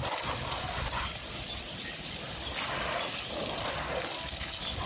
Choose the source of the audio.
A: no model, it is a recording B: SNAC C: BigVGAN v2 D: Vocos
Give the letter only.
A